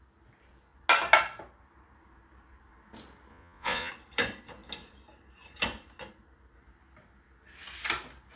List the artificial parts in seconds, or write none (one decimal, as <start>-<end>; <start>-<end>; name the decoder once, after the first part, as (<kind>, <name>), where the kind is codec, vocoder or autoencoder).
3.3-3.9 (vocoder, Vocos)